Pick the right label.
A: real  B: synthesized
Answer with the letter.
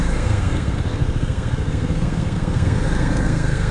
B